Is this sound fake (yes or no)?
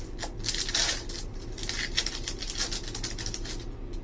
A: no